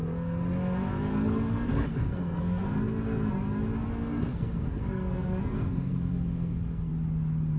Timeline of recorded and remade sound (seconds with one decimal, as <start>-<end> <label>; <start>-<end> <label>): 0.0-1.1 recorded; 1.1-3.3 remade; 3.3-3.9 recorded; 3.9-6.9 remade; 6.9-7.6 recorded